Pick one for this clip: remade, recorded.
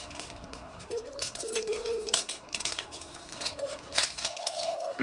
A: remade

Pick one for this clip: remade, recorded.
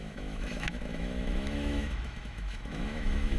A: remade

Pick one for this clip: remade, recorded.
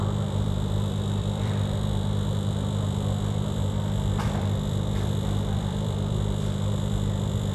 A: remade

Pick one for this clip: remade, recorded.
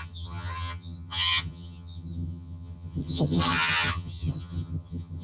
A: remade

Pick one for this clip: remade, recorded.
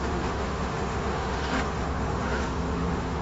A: remade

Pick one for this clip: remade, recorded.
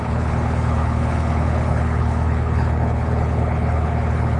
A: remade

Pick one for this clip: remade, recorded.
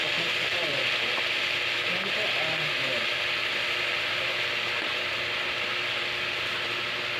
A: recorded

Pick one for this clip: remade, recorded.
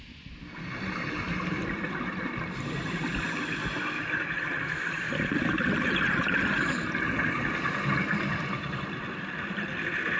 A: recorded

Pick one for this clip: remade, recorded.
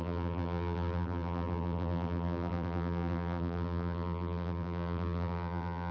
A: remade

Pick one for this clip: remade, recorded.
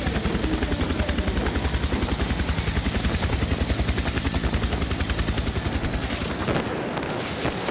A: recorded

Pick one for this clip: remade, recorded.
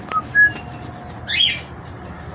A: recorded